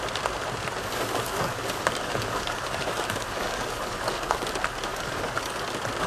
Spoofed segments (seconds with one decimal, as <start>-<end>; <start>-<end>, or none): 0.8-4.5; 4.9-5.6